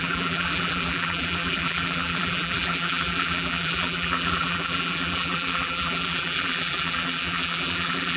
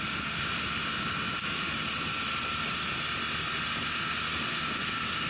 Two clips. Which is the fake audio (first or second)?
first